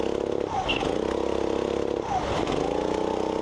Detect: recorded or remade recorded